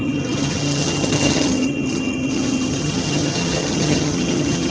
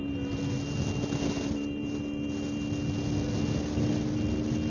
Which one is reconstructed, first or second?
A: first